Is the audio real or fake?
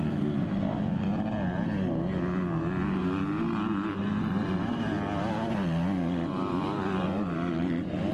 real